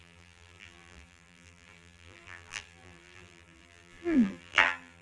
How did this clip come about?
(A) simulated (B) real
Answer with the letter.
A